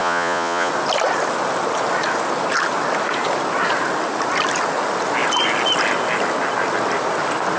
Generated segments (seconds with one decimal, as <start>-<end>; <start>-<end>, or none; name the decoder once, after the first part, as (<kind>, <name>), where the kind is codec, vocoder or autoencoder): 0.0-0.7 (vocoder, Vocos)

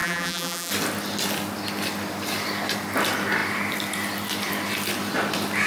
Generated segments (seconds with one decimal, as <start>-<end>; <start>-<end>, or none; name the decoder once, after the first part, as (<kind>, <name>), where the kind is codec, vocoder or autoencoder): 0.0-0.7 (vocoder, BigVGAN v2)

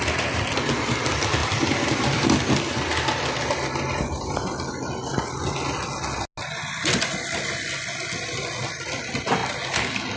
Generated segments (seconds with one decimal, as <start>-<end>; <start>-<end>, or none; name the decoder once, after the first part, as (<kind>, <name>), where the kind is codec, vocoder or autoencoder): 1.4-2.6 (vocoder, BigVGAN v2)

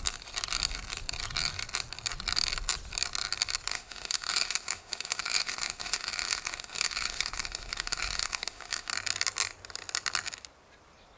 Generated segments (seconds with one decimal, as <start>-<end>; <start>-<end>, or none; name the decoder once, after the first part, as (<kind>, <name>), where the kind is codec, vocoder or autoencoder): 3.7-8.9 (autoencoder, DAC-VAE)

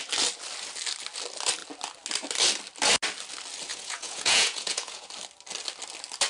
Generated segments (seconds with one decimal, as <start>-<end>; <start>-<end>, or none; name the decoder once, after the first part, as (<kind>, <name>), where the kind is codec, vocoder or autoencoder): 3.7-5.1 (vocoder, Vocos)

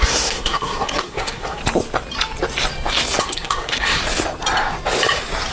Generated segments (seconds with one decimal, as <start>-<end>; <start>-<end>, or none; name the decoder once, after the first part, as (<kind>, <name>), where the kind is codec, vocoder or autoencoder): 0.0-1.6 (codec, SNAC); 3.2-4.0

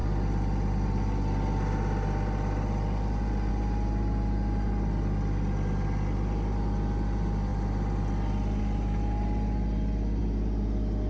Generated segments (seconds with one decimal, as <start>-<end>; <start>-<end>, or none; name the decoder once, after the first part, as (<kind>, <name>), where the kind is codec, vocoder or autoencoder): 0.0-3.5 (vocoder, BigVGAN v2); 7.5-8.6; 10.2-11.1